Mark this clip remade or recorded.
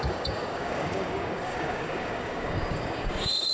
remade